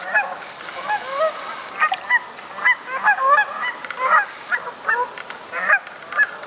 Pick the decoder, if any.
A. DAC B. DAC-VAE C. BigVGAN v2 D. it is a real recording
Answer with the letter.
D